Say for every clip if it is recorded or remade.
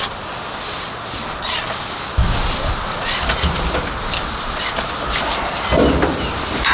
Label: recorded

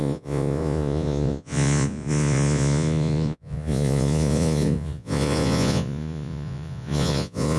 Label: remade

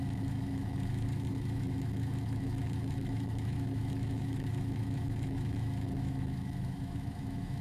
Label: remade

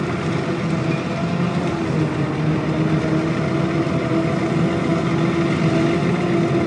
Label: recorded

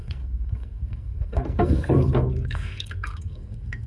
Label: remade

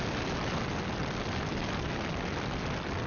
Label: recorded